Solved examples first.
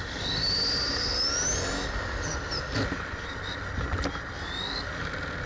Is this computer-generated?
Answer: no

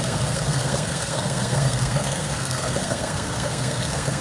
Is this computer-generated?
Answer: yes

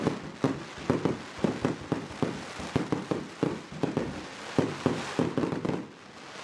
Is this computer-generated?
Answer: no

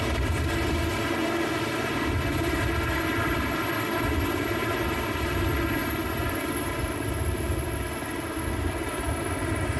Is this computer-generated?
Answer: no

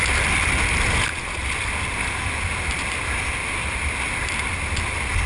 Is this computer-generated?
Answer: no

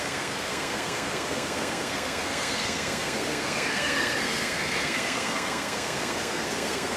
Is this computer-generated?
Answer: yes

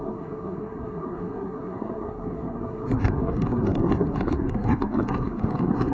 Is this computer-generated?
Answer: yes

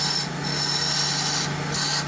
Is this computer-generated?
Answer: no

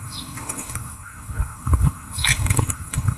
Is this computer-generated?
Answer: yes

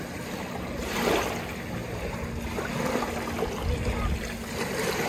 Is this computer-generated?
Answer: no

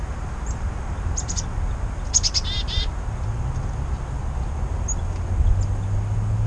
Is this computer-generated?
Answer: no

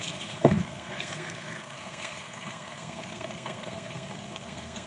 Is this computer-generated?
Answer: yes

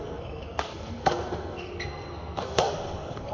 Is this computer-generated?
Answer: yes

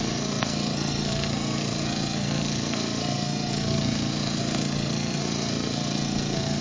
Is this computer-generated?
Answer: yes